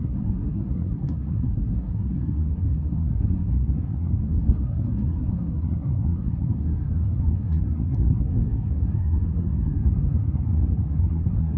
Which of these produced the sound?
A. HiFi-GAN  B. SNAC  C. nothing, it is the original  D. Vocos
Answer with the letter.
B